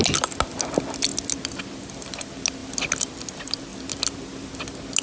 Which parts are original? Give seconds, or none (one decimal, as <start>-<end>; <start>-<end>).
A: 0.0-5.0